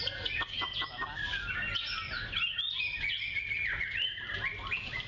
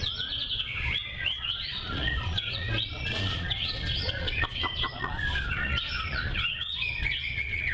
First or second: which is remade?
second